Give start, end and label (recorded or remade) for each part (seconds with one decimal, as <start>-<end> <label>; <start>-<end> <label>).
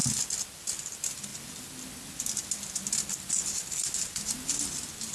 0.0-5.1 recorded